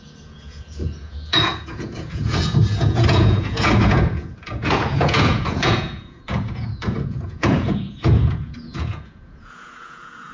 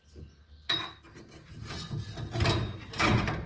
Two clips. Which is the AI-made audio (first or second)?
first